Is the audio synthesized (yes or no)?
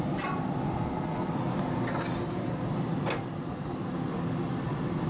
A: no